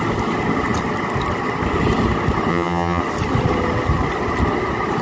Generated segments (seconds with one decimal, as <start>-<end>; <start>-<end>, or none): 2.5-3.0